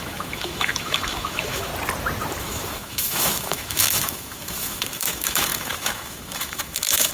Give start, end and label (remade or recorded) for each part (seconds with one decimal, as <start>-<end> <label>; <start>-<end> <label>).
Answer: 0.0-1.7 remade; 1.7-2.4 recorded; 2.4-7.1 remade